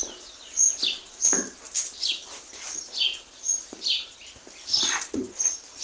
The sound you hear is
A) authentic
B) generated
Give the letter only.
A